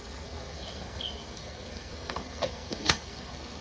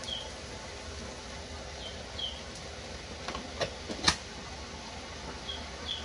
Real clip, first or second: second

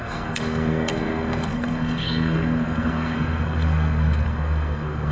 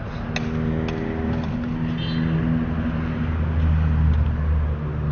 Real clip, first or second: second